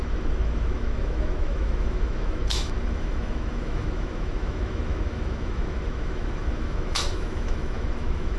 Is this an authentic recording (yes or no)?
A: no